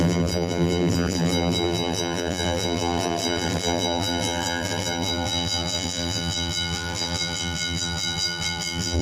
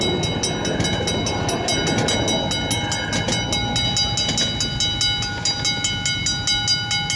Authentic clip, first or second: second